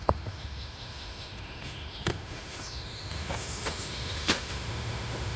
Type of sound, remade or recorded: remade